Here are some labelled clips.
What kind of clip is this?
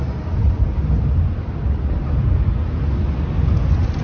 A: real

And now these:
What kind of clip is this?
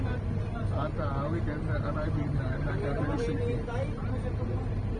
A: fake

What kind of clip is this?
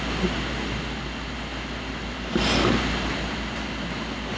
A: real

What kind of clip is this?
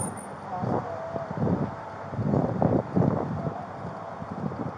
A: real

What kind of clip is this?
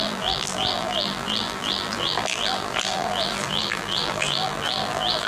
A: fake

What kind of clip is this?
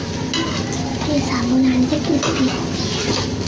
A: real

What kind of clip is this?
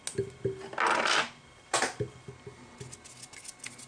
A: real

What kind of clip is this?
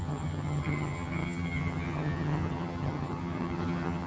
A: fake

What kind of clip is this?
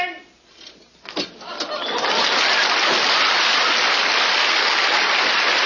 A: real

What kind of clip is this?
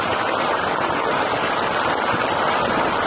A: fake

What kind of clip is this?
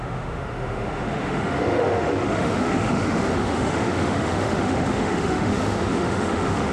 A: fake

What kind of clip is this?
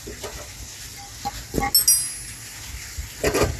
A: real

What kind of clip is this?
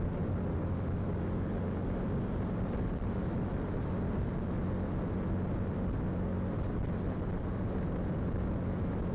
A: real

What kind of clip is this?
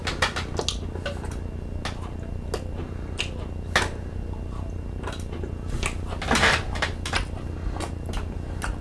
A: real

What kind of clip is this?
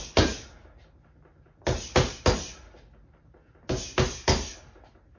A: real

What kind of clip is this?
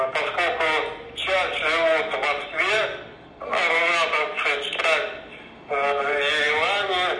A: real